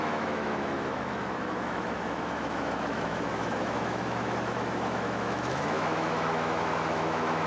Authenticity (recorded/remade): remade